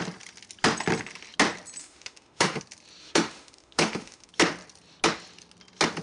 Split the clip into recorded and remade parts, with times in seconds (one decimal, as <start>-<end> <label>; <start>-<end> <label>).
0.0-1.8 recorded; 1.8-2.6 remade; 2.6-3.0 recorded; 3.0-4.3 remade; 4.3-6.0 recorded